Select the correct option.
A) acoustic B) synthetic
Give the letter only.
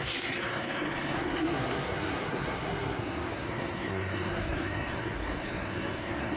B